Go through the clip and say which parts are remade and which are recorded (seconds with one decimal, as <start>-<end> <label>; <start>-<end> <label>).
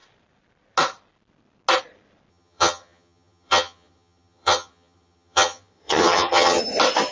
0.0-2.3 recorded; 2.3-6.6 remade; 6.6-7.1 recorded